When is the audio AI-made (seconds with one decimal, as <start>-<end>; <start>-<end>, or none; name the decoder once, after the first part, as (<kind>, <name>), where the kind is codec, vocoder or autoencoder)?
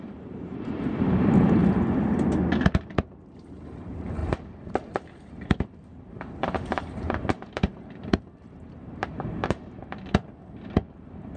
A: 0.0-1.6 (vocoder, BigVGAN v2); 2.8-9.8; 10.9-11.4